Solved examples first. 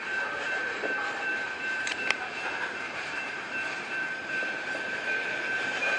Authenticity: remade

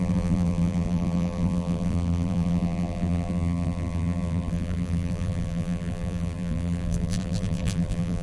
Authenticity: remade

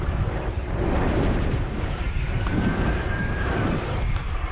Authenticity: remade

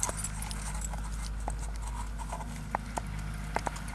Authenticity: recorded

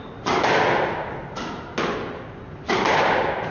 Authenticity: recorded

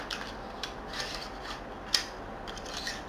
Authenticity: recorded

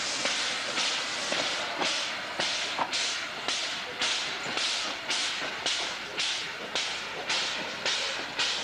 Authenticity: recorded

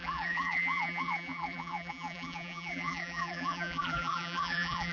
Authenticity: remade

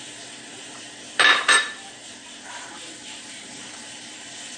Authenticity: remade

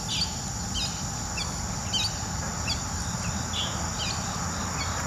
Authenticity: recorded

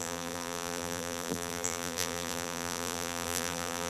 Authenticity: remade